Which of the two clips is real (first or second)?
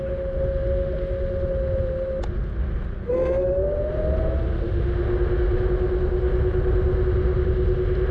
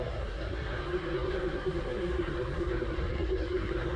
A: first